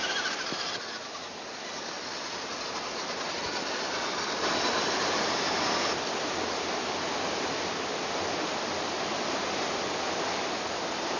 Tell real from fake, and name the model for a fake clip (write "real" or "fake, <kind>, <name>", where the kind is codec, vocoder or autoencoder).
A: real